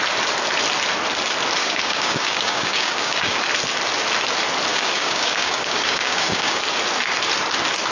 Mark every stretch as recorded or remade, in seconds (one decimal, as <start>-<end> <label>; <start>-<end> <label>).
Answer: 0.0-1.6 recorded; 1.6-3.4 remade; 3.4-4.7 recorded; 4.7-6.6 remade; 6.6-7.9 recorded